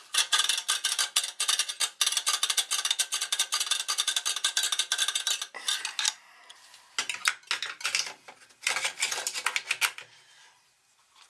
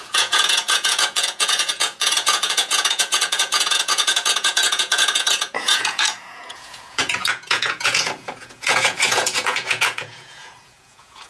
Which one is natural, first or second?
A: first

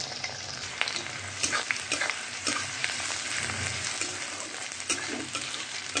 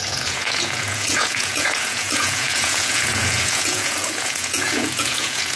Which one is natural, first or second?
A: first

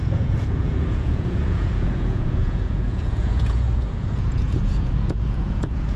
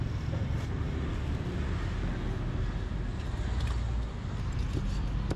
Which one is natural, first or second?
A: second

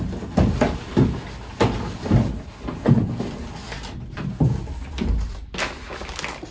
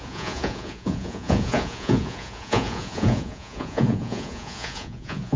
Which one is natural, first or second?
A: first